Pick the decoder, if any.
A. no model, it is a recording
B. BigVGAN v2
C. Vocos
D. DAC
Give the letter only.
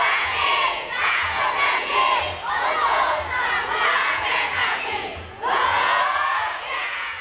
C